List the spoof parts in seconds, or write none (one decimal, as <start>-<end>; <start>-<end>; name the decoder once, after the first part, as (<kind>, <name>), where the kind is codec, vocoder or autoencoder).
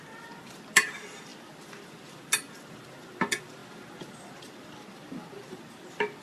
0.0-6.2 (vocoder, BigVGAN v2)